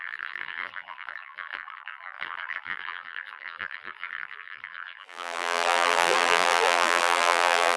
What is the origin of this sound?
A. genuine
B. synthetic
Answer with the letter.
B